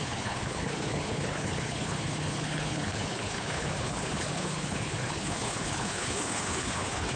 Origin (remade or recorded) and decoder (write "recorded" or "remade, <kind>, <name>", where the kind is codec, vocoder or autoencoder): remade, codec, HILCodec